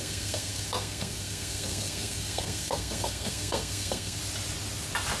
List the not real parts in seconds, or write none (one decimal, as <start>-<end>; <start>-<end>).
0.0-4.2